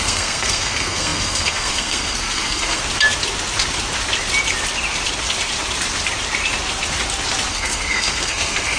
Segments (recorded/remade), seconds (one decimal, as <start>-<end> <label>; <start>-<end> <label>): 0.0-2.8 remade; 2.8-7.5 recorded; 7.5-8.8 remade